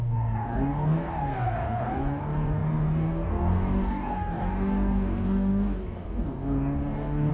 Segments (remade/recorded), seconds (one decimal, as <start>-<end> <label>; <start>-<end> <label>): 0.0-7.3 remade